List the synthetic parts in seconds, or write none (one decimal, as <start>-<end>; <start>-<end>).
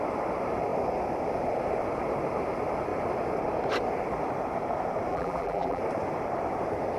5.1-5.8